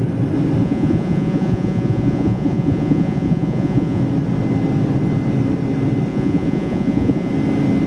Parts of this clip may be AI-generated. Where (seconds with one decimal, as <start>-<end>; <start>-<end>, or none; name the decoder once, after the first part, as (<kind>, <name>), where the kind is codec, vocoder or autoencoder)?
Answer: 0.6-4.0 (vocoder, Vocos); 6.1-7.3